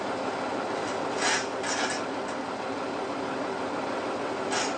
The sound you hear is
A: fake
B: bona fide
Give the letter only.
B